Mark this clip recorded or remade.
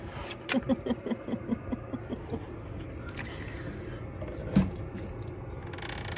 recorded